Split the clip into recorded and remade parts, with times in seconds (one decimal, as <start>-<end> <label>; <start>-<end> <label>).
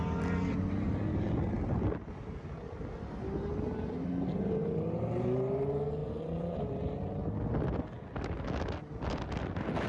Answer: 0.0-6.0 recorded; 6.0-6.7 remade; 6.7-9.9 recorded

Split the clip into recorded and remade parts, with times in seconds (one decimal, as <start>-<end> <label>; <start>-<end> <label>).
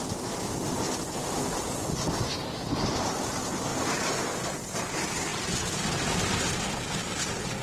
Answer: 0.0-7.6 recorded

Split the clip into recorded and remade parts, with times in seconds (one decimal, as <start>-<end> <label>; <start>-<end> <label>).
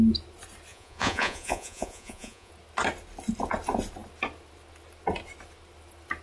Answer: 0.0-0.7 recorded; 0.7-2.5 remade; 2.5-6.2 recorded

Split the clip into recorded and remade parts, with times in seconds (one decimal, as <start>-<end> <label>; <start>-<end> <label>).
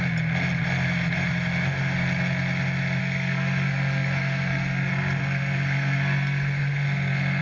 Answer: 0.0-3.0 recorded; 3.0-7.4 remade